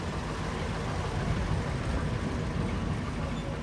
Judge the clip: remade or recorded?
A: recorded